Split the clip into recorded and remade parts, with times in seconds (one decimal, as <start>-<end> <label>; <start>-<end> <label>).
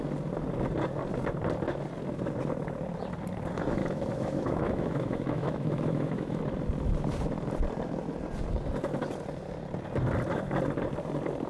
0.0-3.8 recorded; 3.8-6.4 remade; 6.4-11.5 recorded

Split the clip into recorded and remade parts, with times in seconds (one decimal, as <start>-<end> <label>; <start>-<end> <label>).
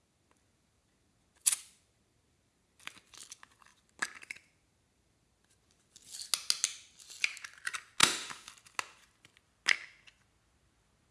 0.0-8.0 recorded; 8.0-8.5 remade; 8.5-11.1 recorded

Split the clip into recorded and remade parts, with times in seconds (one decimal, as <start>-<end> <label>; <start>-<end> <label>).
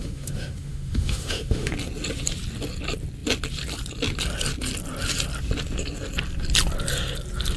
0.0-1.7 remade; 1.7-7.6 recorded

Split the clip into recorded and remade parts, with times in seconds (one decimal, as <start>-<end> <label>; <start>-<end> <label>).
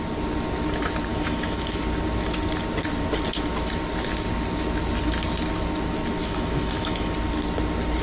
0.0-1.1 recorded; 1.1-1.8 remade; 1.8-6.2 recorded; 6.2-7.1 remade; 7.1-8.0 recorded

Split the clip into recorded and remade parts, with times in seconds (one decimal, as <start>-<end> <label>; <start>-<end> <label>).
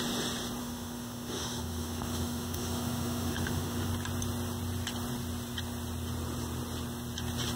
0.0-0.6 recorded; 0.6-3.9 remade; 3.9-7.6 recorded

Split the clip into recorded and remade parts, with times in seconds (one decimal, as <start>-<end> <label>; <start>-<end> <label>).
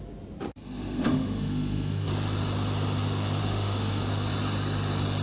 0.0-0.6 recorded; 0.6-2.1 remade; 2.1-3.4 recorded; 3.4-4.0 remade; 4.0-5.2 recorded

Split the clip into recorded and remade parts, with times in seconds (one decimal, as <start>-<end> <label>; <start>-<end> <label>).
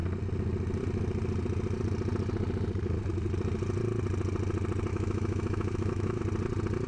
0.0-4.9 recorded; 4.9-6.2 remade; 6.2-6.9 recorded